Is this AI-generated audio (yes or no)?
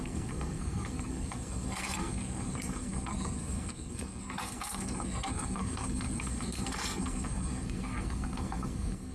yes